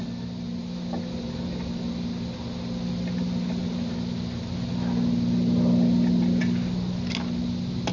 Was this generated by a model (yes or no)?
no